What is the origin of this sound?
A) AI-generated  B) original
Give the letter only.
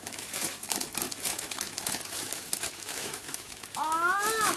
A